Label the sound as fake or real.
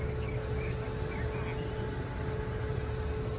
real